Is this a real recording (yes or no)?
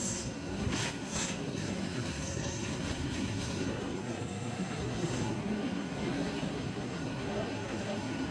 no